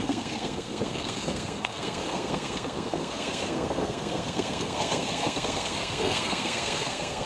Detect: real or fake fake